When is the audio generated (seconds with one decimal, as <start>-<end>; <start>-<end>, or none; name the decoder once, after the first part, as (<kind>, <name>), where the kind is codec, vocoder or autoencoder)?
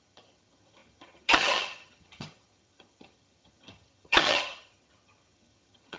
0.0-6.0 (vocoder, HiFi-GAN)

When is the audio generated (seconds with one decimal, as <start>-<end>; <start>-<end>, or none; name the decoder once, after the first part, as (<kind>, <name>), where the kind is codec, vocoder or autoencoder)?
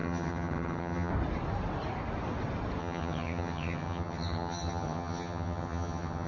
0.0-1.1 (vocoder, HiFi-GAN); 2.8-6.3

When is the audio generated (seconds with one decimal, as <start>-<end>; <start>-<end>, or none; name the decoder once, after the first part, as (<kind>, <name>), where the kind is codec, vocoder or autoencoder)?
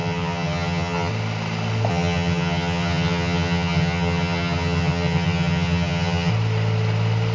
0.0-1.1 (vocoder, HiFi-GAN); 1.9-6.3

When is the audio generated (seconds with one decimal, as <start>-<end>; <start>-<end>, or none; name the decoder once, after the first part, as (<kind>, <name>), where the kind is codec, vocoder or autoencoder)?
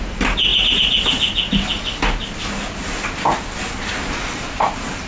none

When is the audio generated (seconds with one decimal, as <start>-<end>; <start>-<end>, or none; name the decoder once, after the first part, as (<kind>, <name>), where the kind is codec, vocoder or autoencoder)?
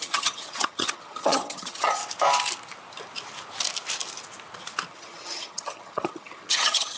0.0-2.0 (vocoder, HiFi-GAN); 4.9-7.0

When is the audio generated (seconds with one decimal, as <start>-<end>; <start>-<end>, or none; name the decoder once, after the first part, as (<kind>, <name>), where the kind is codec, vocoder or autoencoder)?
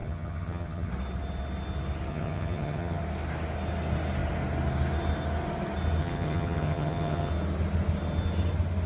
0.0-0.9 (vocoder, HiFi-GAN); 2.1-3.0; 6.0-7.3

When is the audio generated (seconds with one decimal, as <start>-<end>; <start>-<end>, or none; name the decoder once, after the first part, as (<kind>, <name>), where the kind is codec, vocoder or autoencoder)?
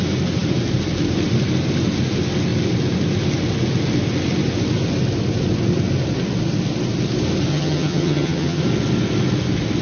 7.5-8.6 (vocoder, HiFi-GAN)